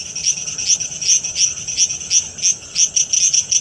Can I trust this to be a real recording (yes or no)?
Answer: yes